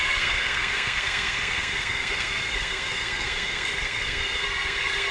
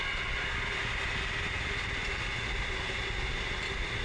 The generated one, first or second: first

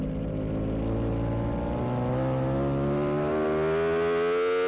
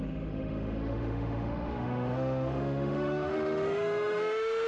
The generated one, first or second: second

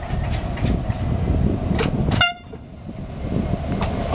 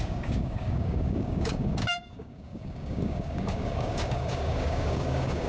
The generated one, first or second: second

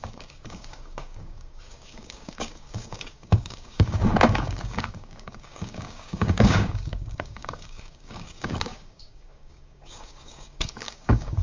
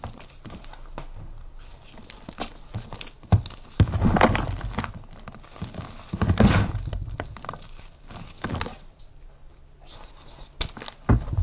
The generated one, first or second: first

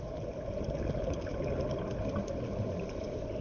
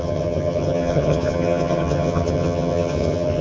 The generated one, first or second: second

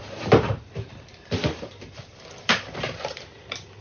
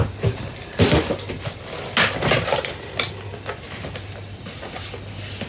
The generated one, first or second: first